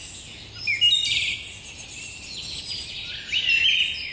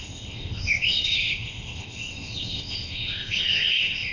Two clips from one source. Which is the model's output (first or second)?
second